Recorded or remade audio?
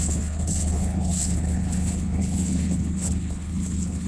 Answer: remade